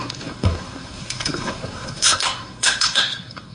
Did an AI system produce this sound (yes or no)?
yes